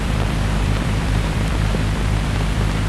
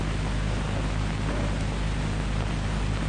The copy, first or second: first